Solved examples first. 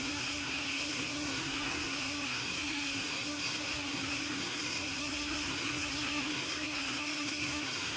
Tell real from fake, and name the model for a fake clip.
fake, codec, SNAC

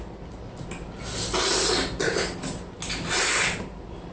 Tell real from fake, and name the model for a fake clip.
real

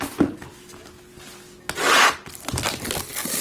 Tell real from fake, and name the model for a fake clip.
real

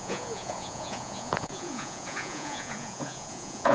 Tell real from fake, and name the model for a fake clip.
fake, vocoder, Vocos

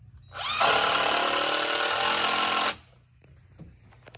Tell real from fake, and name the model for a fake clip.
real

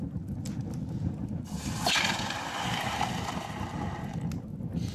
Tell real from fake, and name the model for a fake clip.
real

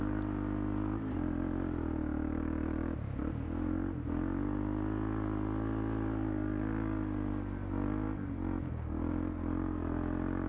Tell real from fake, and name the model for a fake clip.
real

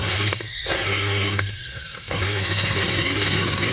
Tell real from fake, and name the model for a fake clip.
fake, codec, SNAC